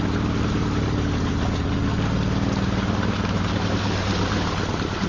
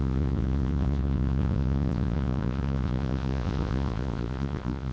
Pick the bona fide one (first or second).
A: first